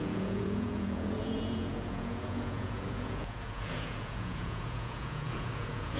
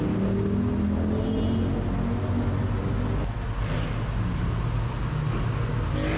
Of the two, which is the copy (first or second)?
first